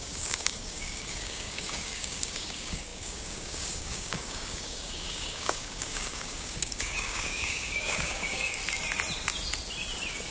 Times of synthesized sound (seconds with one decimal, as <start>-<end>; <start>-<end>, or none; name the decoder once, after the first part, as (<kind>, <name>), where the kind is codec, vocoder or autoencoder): 0.0-8.6 (codec, DAC)